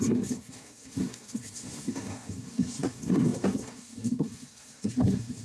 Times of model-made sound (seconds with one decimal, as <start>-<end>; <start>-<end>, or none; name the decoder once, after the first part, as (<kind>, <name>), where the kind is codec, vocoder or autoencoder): 0.0-5.4 (codec, SNAC)